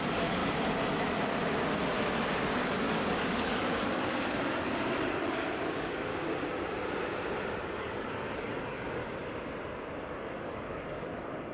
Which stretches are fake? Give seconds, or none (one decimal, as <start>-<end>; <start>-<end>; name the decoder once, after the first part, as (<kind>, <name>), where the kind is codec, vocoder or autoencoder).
0.0-0.4 (codec, DAC); 2.6-6.1; 7.6-9.0; 10.1-11.5